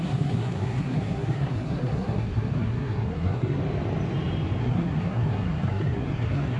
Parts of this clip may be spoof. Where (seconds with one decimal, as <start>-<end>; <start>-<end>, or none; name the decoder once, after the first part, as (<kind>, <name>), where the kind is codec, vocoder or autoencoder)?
0.0-3.6 (codec, SNAC); 4.6-6.6